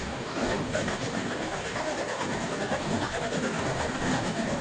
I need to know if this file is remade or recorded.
remade